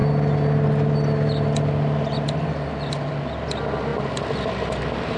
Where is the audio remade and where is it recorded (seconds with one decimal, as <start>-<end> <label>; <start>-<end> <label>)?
0.0-5.2 recorded